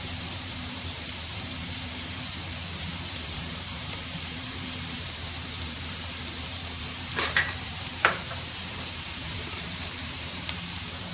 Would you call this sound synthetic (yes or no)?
yes